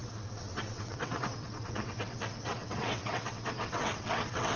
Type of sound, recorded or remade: remade